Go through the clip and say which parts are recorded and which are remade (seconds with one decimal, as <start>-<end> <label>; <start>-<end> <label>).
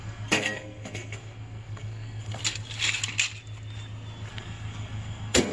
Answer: 0.0-2.4 remade; 2.4-4.3 recorded; 4.3-5.5 remade